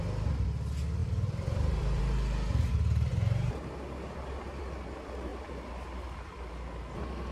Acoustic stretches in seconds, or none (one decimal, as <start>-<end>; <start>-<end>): 0.0-1.0; 2.0-5.3; 6.5-7.3